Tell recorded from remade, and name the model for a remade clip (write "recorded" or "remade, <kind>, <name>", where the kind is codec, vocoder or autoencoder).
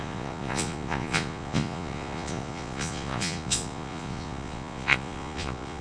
remade, vocoder, Vocos